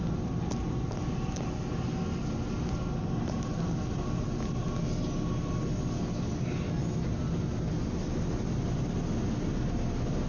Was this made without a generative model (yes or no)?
yes